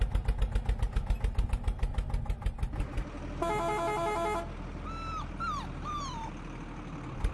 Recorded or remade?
recorded